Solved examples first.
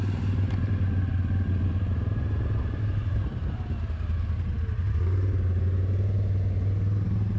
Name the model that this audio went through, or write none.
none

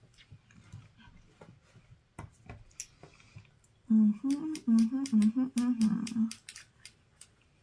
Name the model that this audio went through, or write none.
none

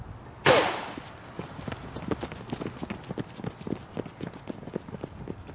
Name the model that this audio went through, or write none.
none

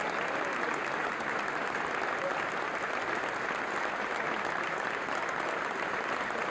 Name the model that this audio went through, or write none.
none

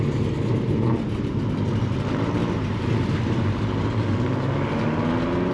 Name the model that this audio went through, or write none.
none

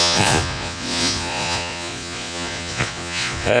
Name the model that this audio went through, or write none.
vocoder, Vocos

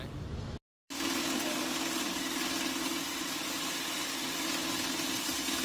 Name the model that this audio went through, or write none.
none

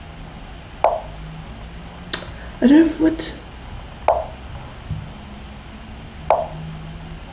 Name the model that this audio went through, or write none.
none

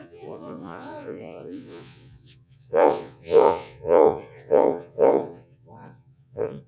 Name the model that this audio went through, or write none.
vocoder, Vocos